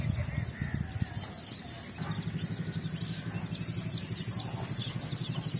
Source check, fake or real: real